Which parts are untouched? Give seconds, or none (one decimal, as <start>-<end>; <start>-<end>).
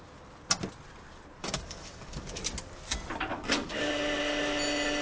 0.0-1.4; 2.4-3.3; 3.9-5.0